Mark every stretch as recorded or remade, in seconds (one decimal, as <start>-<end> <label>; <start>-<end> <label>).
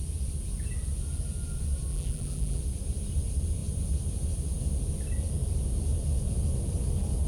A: 0.0-1.9 recorded; 1.9-2.6 remade; 2.6-7.3 recorded